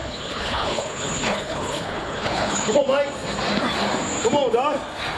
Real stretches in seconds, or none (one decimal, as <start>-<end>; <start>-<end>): 2.8-5.2